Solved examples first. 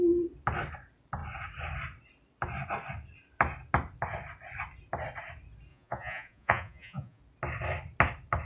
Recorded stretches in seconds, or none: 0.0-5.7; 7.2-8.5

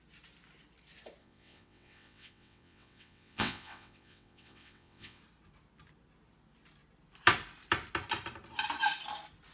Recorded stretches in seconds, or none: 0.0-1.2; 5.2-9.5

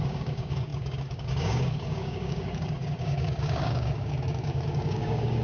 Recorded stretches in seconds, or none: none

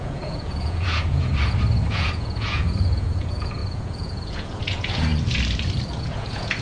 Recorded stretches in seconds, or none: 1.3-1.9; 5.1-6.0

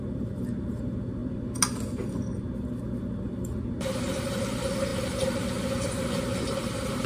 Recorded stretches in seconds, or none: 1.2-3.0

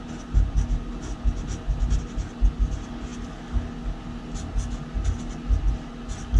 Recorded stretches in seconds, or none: 0.0-6.4

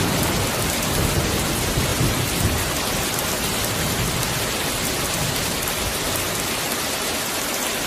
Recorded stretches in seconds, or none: 0.0-7.9

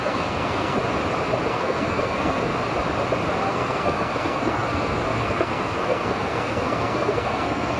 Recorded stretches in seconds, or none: 0.8-1.5; 2.5-3.5